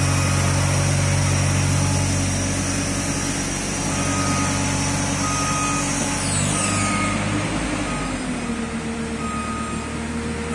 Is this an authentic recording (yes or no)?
yes